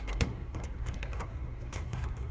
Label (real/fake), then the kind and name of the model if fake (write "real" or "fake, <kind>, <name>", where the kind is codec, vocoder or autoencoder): fake, codec, SNAC